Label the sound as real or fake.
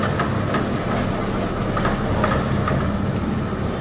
real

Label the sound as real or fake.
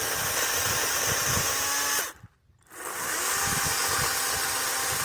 real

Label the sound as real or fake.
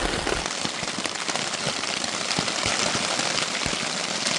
real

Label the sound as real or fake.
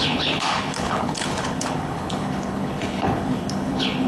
fake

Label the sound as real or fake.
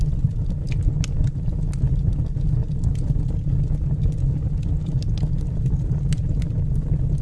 real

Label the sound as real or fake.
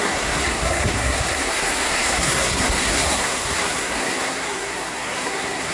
fake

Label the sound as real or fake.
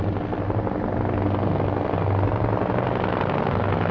real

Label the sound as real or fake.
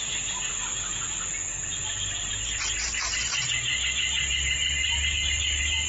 real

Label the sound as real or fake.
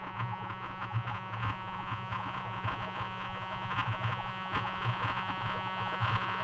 fake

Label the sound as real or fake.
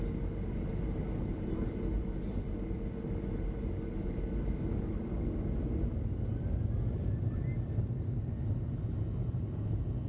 real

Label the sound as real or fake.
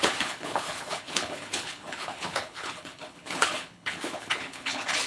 fake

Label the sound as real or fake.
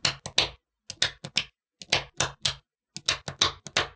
real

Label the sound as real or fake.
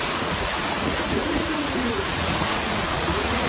fake